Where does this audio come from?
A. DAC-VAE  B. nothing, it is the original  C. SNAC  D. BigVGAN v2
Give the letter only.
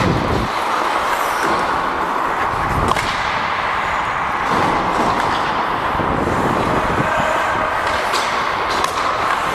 B